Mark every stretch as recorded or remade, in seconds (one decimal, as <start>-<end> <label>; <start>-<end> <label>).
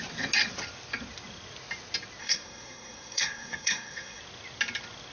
0.0-2.2 recorded; 2.2-4.2 remade; 4.2-5.1 recorded